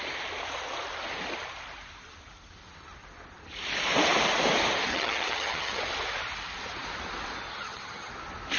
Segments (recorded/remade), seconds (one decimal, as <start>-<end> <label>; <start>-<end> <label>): 0.0-4.9 recorded; 4.9-5.8 remade; 5.8-7.5 recorded; 7.5-8.1 remade; 8.1-8.6 recorded

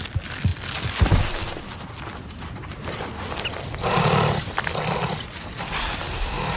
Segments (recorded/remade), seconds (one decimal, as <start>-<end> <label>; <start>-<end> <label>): 0.0-6.6 recorded

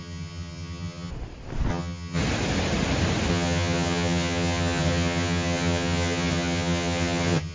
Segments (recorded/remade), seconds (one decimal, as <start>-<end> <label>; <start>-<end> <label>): 0.0-1.1 remade; 1.1-1.7 recorded; 1.7-2.2 remade; 2.2-3.3 recorded; 3.3-7.5 remade

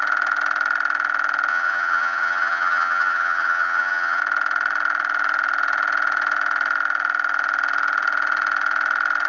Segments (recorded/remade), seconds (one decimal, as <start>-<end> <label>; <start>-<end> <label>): 0.0-1.5 recorded; 1.5-4.2 remade; 4.2-9.3 recorded

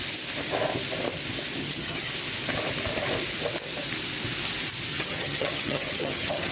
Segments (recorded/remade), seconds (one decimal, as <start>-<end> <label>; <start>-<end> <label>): 0.0-1.6 recorded; 1.6-2.1 remade; 2.1-4.9 recorded; 4.9-6.5 remade

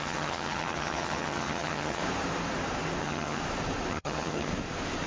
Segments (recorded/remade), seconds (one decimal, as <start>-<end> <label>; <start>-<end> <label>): 0.0-2.0 remade; 2.0-3.0 recorded; 3.0-3.4 remade; 3.4-3.9 recorded; 3.9-4.5 remade; 4.5-5.1 recorded

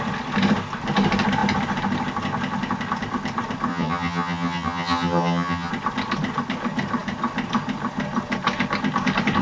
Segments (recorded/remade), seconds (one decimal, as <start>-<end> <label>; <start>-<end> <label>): 0.0-3.7 recorded; 3.7-5.7 remade; 5.7-9.4 recorded